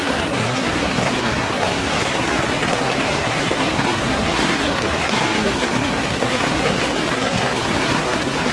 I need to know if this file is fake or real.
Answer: fake